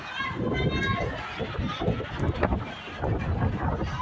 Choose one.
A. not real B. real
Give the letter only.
B